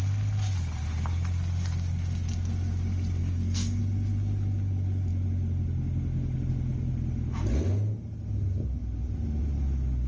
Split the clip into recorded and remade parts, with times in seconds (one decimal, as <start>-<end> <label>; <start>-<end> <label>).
0.0-3.2 recorded; 3.2-3.8 remade; 3.8-10.1 recorded